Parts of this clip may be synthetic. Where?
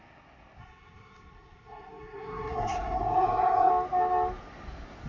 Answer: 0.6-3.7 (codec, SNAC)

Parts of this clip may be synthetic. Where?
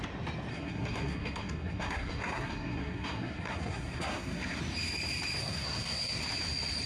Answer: 0.5-4.6 (codec, SNAC); 5.4-6.2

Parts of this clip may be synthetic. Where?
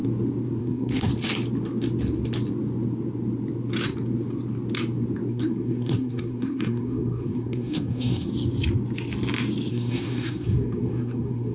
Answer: 0.6-1.1 (codec, SNAC); 5.3-8.3; 9.7-11.5